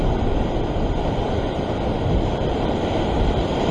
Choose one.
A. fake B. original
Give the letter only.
A